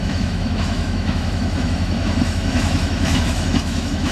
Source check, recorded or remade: remade